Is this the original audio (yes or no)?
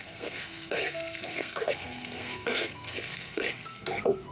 no